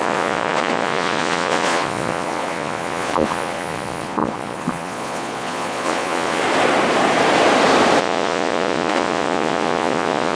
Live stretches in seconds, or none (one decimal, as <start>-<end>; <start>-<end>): 6.4-8.0